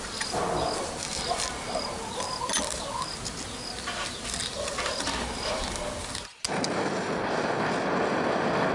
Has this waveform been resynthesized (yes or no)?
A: no